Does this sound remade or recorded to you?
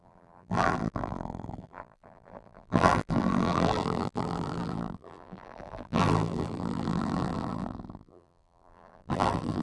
remade